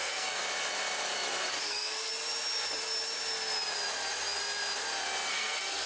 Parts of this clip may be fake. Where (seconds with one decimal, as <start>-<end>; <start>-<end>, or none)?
0.0-0.4; 1.6-2.1; 5.3-5.9